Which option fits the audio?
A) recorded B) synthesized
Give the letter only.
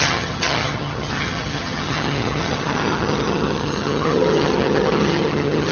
B